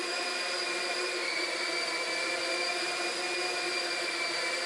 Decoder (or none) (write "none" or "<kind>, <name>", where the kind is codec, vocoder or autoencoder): none